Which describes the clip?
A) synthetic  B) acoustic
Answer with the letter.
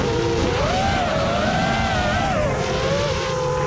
B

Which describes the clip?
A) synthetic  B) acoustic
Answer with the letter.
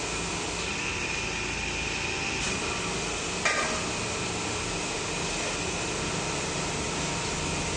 B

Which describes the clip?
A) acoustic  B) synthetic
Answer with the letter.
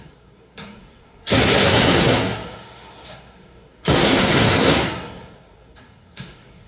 B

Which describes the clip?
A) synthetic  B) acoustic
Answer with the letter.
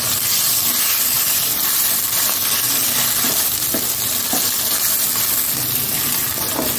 B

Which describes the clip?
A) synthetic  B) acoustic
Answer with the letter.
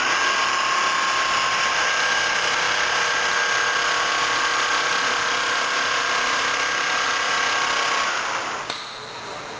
B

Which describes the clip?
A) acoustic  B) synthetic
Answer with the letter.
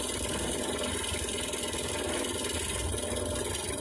A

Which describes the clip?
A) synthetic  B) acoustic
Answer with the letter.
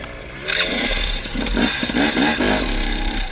A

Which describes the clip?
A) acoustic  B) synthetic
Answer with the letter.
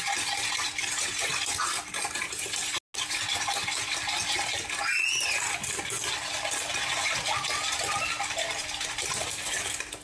A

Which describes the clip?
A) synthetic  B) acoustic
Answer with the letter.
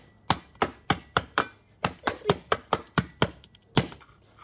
B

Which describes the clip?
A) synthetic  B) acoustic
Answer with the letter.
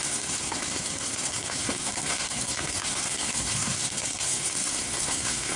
A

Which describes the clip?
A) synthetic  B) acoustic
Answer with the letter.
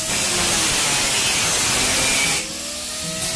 B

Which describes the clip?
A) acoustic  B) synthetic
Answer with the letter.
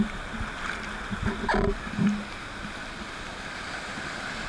A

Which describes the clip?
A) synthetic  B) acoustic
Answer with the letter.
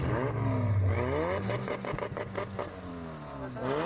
B